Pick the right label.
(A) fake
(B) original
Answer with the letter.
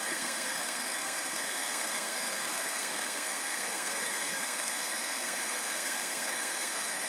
A